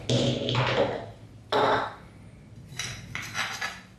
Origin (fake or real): real